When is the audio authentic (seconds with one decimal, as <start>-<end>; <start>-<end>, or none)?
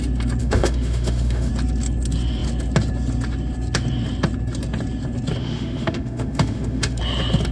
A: 0.0-0.4; 1.5-5.4; 7.0-7.5